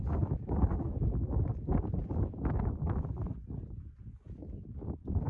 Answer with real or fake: real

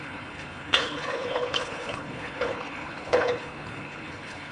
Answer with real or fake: fake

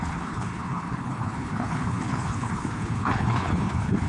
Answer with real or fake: fake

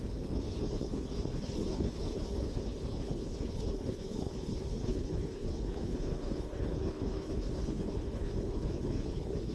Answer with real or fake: fake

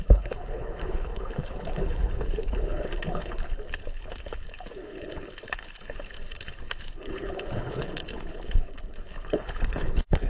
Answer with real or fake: fake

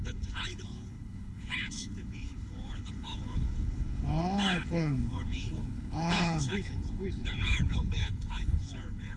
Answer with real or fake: fake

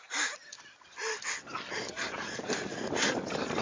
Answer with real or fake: real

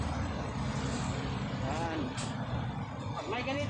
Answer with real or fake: real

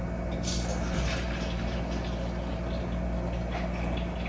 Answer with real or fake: real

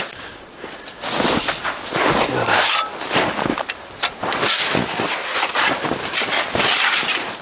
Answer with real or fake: real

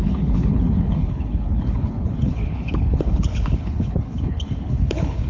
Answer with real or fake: fake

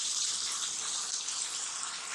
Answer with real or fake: real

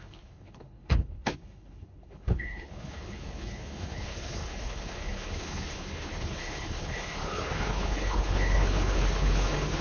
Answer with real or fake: fake